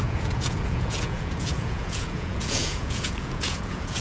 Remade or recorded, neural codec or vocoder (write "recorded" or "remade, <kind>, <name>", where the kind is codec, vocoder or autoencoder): remade, vocoder, Vocos